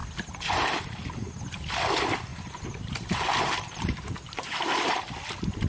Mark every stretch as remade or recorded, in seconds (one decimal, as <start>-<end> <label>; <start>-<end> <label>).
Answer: 0.0-2.3 recorded; 2.3-4.6 remade; 4.6-5.7 recorded